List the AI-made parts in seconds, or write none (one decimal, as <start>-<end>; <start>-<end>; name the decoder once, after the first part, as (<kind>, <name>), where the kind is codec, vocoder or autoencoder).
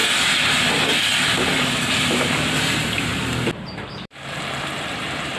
1.9-3.1 (vocoder, BigVGAN v2); 3.7-5.4